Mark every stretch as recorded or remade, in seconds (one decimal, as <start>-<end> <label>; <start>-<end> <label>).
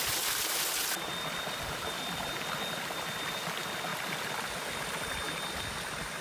0.0-6.2 recorded